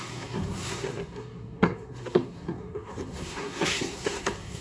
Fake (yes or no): yes